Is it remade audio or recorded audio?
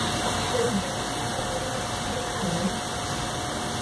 recorded